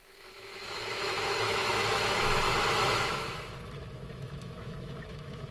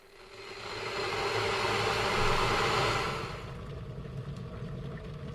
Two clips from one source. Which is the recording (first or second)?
second